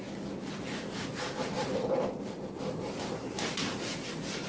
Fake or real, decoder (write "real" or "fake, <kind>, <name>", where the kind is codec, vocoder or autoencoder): real